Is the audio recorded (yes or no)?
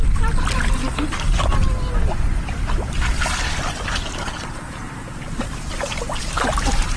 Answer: yes